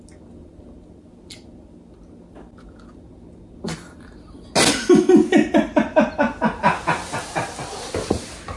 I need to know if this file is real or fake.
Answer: real